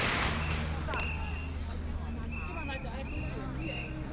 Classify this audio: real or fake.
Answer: real